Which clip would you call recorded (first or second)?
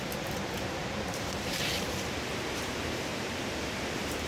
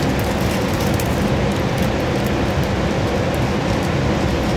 second